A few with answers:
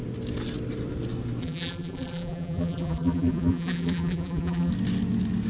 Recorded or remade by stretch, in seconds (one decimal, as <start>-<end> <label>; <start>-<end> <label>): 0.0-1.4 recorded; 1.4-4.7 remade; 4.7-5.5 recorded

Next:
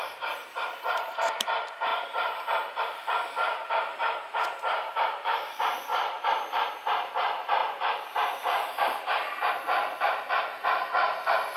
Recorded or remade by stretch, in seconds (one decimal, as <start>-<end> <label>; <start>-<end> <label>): 0.0-4.0 remade; 4.0-4.7 recorded; 4.7-11.6 remade

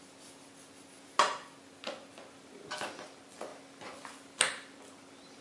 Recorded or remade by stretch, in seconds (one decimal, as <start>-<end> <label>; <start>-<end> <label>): 0.0-5.4 recorded

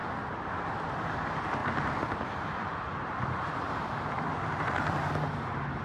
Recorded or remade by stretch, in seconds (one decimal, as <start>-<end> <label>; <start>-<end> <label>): 0.0-0.6 remade; 0.6-1.6 recorded; 1.6-5.1 remade; 5.1-5.8 recorded

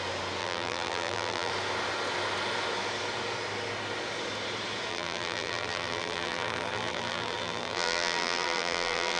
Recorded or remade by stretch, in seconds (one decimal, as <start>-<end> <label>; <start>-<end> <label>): 0.0-0.4 recorded; 0.4-1.5 remade; 1.5-4.9 recorded; 4.9-9.2 remade

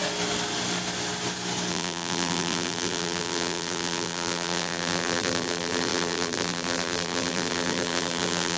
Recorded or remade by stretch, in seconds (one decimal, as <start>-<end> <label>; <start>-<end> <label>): 0.0-1.7 recorded; 1.7-8.6 remade